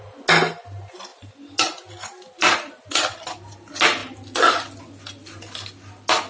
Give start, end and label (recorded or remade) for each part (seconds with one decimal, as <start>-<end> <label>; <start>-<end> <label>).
0.0-6.3 recorded